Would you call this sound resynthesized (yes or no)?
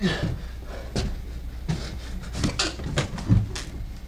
no